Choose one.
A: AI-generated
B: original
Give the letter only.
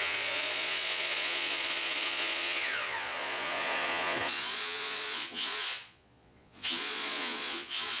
A